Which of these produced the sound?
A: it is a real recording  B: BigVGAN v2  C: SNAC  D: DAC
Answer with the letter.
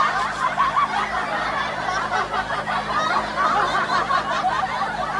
A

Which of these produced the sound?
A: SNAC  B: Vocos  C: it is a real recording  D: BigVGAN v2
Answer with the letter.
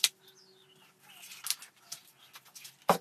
C